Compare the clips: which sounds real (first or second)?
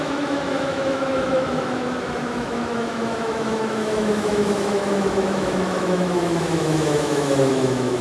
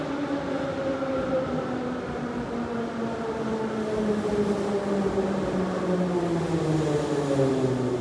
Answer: second